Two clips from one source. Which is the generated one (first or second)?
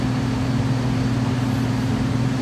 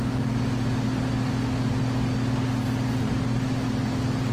first